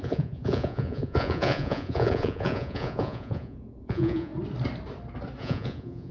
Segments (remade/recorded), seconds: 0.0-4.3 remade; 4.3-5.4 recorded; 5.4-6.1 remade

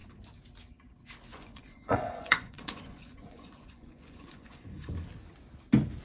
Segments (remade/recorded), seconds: 0.0-1.3 recorded; 1.3-4.9 remade; 4.9-6.0 recorded

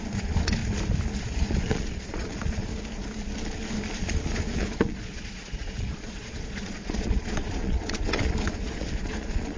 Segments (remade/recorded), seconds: 0.0-0.6 remade; 0.6-1.2 recorded; 1.2-2.7 remade; 2.7-4.0 recorded; 4.0-9.6 remade

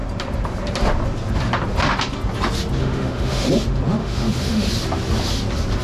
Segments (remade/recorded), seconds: 0.0-2.8 recorded; 2.8-3.5 remade; 3.5-4.0 recorded; 4.0-4.7 remade; 4.7-5.8 recorded

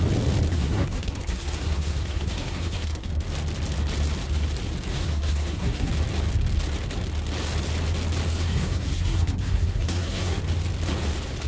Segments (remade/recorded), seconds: 0.0-0.5 recorded; 0.5-3.1 remade; 3.1-4.9 recorded; 4.9-5.9 remade; 5.9-8.3 recorded; 8.3-10.4 remade; 10.4-11.5 recorded